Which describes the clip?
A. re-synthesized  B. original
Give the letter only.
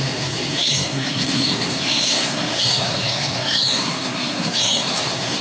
A